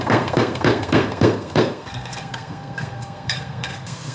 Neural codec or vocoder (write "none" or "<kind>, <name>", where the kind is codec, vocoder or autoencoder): codec, SNAC